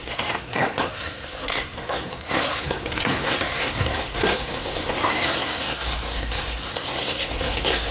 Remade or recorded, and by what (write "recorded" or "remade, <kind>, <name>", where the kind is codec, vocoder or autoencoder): remade, codec, SNAC